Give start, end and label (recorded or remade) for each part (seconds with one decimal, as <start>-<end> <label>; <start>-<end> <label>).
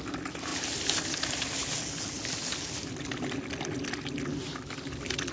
0.0-5.3 recorded